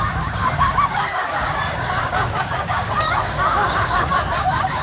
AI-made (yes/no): yes